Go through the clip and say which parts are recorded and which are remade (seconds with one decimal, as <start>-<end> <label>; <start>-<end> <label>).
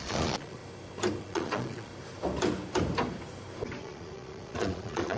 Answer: 0.0-0.6 remade; 0.6-1.2 recorded; 1.2-1.9 remade; 1.9-3.8 recorded; 3.8-5.2 remade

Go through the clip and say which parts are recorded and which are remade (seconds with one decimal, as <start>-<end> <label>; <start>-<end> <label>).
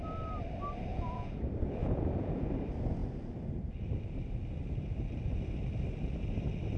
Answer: 0.0-0.9 recorded; 0.9-1.4 remade; 1.4-1.8 recorded; 1.8-2.5 remade; 2.5-6.8 recorded